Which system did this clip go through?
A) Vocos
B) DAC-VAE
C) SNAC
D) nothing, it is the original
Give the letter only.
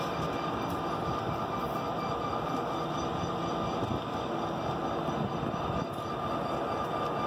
D